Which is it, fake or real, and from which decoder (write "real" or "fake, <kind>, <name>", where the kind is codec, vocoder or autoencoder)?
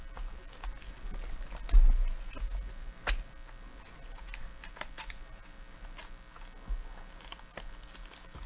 real